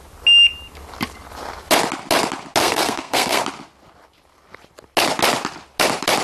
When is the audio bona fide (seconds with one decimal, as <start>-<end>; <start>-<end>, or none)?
0.0-2.6; 3.4-6.2